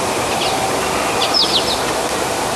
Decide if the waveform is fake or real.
real